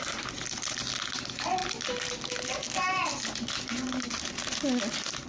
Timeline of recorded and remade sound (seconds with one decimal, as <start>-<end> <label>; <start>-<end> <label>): 0.0-5.3 recorded